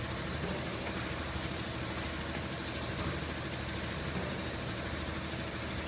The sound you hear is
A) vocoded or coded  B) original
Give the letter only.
B